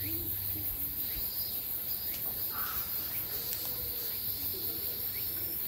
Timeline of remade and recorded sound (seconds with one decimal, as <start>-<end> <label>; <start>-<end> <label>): 0.0-0.9 recorded; 0.9-4.1 remade; 4.1-5.7 recorded

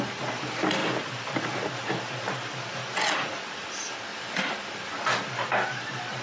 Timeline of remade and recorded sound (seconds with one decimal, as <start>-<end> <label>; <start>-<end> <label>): 0.0-0.8 recorded; 0.8-1.6 remade; 1.6-4.1 recorded; 4.1-4.7 remade; 4.7-6.2 recorded

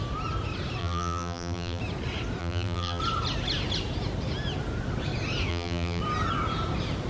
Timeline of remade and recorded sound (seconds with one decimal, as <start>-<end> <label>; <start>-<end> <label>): 0.0-0.8 recorded; 0.8-1.8 remade; 1.8-2.4 recorded; 2.4-3.0 remade; 3.0-5.5 recorded; 5.5-6.0 remade; 6.0-7.1 recorded

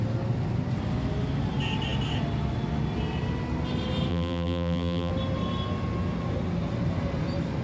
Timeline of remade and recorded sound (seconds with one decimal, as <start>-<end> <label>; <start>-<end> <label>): 0.0-4.1 recorded; 4.1-5.1 remade; 5.1-7.6 recorded